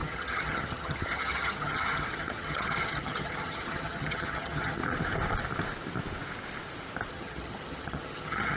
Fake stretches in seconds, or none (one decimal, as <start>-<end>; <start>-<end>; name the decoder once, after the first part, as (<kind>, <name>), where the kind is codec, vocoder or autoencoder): 0.0-4.8 (vocoder, HiFi-GAN); 7.1-8.6